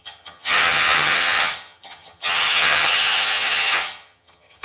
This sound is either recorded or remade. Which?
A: remade